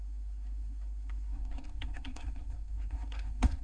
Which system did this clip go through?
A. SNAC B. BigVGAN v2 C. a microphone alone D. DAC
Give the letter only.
A